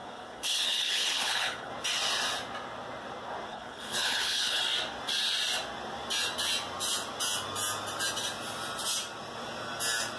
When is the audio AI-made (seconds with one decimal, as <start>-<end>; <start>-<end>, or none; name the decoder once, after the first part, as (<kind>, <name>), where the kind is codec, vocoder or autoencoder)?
0.0-1.7 (codec, HILCodec); 3.5-4.6